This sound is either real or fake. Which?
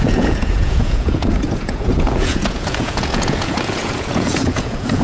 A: fake